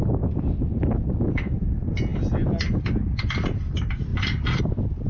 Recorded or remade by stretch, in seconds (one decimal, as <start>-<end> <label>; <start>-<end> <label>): 0.0-5.1 recorded